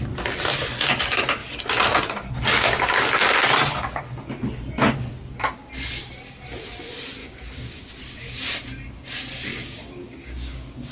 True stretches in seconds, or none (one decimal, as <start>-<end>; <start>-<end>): 0.0-7.2; 7.9-9.5